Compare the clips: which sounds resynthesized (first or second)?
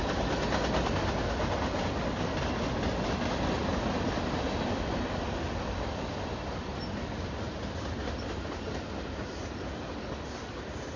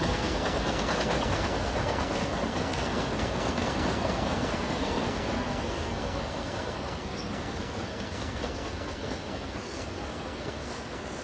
second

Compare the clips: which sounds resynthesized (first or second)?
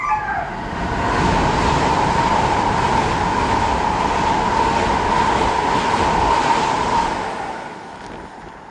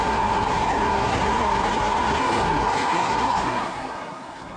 second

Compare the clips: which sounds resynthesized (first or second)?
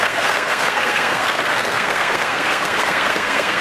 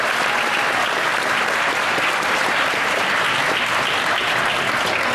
first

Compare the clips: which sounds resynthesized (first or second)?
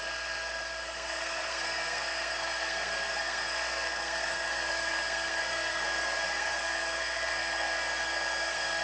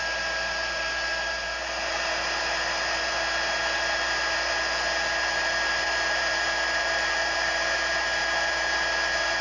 first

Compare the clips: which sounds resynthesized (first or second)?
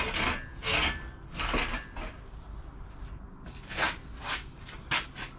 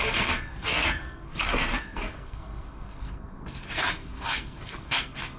second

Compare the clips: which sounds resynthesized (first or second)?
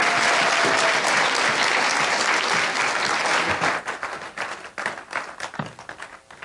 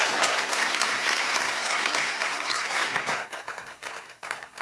second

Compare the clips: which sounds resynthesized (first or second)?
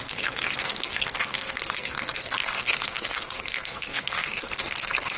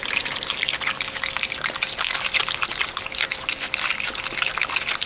first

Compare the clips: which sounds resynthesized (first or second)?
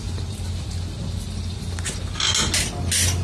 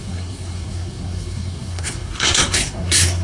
second